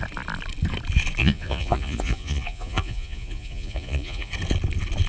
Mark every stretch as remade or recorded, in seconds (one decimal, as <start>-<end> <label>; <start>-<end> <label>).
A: 0.0-1.2 recorded; 1.2-4.3 remade; 4.3-5.1 recorded